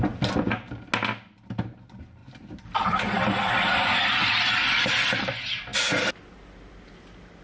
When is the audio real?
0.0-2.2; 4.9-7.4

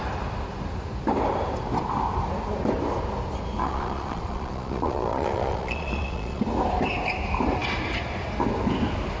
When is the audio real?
0.0-3.6; 6.4-9.2

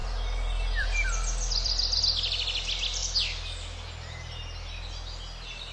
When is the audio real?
2.0-5.7

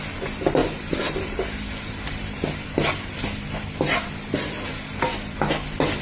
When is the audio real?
0.0-6.0

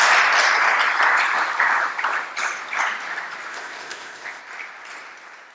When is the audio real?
0.0-3.5; 4.4-5.5

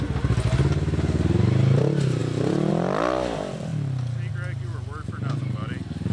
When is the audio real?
0.0-6.1

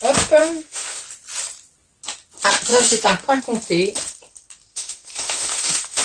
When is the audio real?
0.0-0.4; 1.0-2.7; 3.4-4.7

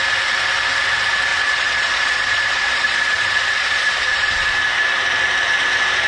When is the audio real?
0.0-1.3; 4.4-6.1